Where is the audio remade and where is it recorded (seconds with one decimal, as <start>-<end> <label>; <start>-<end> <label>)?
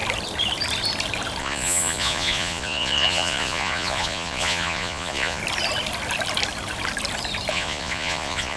0.0-1.4 recorded; 1.4-5.4 remade; 5.4-7.5 recorded; 7.5-8.6 remade